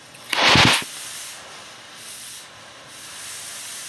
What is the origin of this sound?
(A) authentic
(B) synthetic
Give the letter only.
A